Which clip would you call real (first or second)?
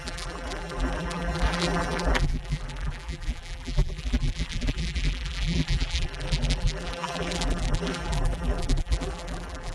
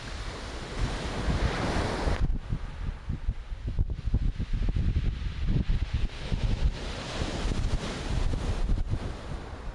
second